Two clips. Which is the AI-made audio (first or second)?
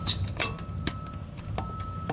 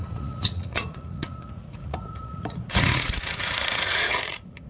second